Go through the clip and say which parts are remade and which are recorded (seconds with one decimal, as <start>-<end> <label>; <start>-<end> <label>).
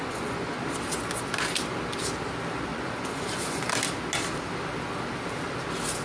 0.0-0.6 remade; 0.6-2.7 recorded; 2.7-3.6 remade; 3.6-6.0 recorded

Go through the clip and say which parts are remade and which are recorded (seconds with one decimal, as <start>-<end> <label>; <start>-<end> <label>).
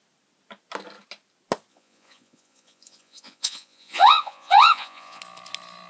0.0-1.7 recorded; 1.7-5.2 remade; 5.2-5.9 recorded